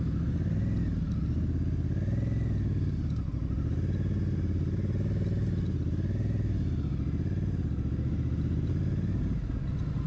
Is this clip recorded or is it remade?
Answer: recorded